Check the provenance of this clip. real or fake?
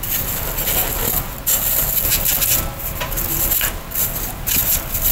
real